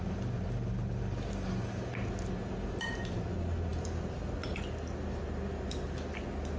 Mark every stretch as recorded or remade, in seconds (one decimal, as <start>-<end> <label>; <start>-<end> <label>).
0.0-6.6 recorded